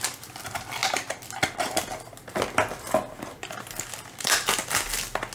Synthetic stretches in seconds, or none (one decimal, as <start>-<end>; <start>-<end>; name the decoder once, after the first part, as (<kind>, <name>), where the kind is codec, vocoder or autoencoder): none